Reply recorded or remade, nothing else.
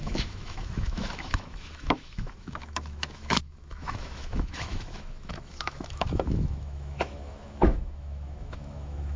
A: remade